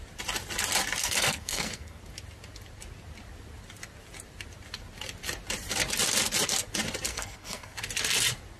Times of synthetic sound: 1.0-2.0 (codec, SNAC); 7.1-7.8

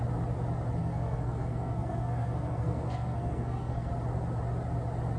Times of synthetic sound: 0.8-3.9 (codec, SNAC)

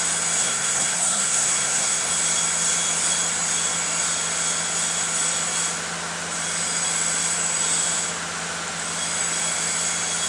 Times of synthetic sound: 0.4-2.1 (codec, SNAC)

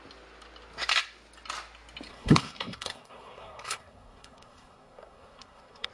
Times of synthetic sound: 2.1-5.9 (codec, SNAC)

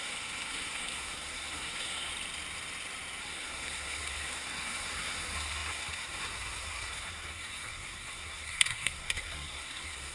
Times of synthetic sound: 0.0-2.1 (codec, SNAC); 3.2-10.1

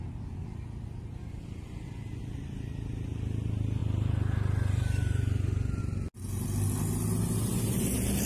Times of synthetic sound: none

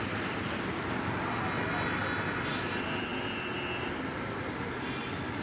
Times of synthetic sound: none

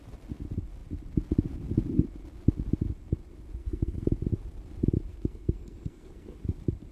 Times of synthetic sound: 3.6-4.1 (codec, SNAC); 5.1-6.4